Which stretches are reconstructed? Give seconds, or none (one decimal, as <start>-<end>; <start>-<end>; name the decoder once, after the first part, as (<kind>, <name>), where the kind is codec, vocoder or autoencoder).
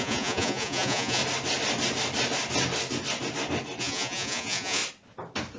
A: 0.0-1.2 (vocoder, Vocos); 3.8-4.8